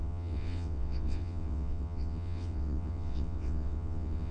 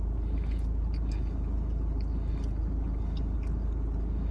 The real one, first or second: second